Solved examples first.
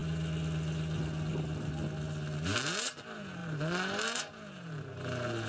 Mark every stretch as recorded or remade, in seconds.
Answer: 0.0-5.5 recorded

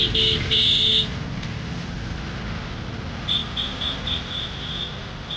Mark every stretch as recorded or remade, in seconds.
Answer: 0.0-5.4 recorded

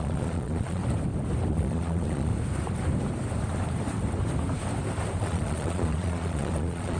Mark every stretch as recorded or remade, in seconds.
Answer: 0.0-0.8 remade; 0.8-1.5 recorded; 1.5-2.3 remade; 2.3-5.2 recorded; 5.2-7.0 remade

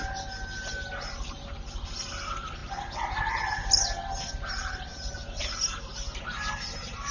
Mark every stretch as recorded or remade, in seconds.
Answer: 0.0-7.1 recorded

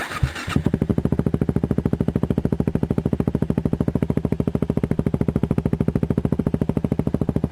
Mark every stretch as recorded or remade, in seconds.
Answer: 0.0-7.5 recorded